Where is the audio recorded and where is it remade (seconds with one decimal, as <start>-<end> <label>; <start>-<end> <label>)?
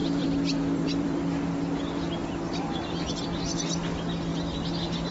0.0-1.4 remade; 1.4-2.2 recorded; 2.2-3.1 remade; 3.1-5.1 recorded